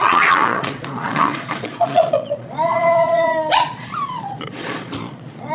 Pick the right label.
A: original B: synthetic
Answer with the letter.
B